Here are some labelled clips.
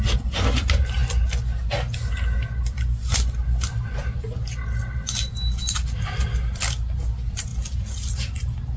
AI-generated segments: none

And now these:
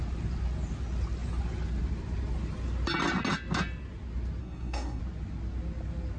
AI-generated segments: 4.4-5.0

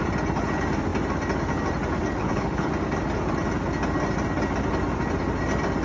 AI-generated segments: 2.2-2.7

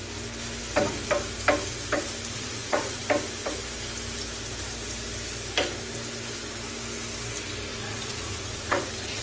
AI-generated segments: 2.3-3.0; 7.7-9.2

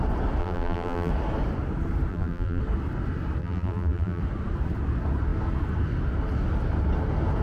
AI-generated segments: 0.4-1.1; 2.1-2.6; 3.4-4.2

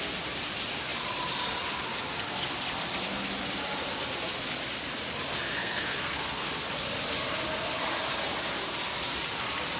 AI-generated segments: 5.5-6.5

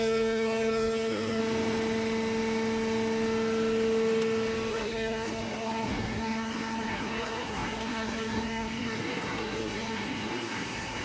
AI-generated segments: 0.0-1.4; 4.7-11.0